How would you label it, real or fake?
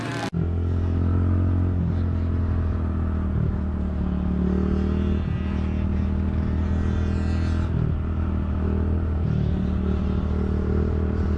real